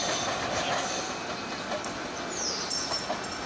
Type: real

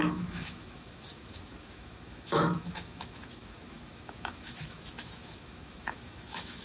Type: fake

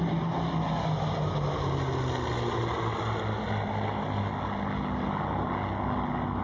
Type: real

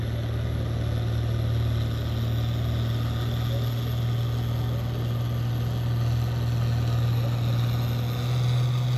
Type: real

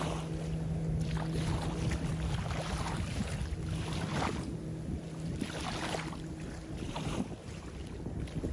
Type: real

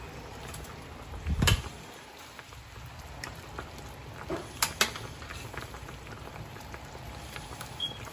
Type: real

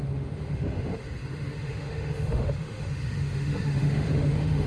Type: fake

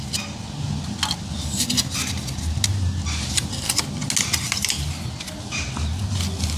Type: real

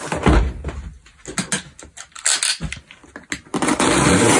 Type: real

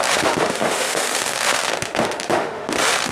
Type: fake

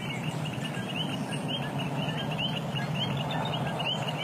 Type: real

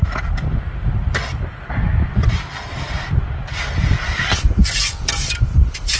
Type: real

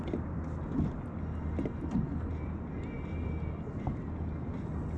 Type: real